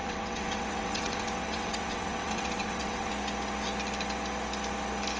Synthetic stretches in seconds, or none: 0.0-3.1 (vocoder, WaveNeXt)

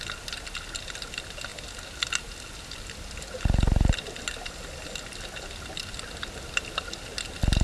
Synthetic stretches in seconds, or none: none

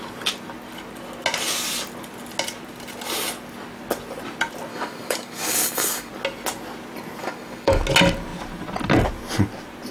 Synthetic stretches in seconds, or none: 4.7-6.1 (codec, DAC); 7.2-7.8